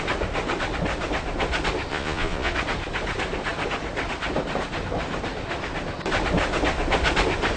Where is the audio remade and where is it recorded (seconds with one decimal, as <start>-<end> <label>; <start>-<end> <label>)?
0.0-1.9 recorded; 1.9-2.5 remade; 2.5-7.6 recorded